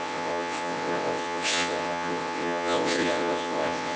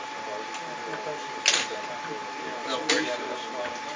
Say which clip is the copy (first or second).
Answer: first